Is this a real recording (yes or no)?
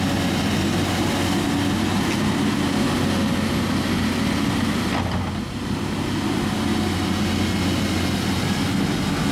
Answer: yes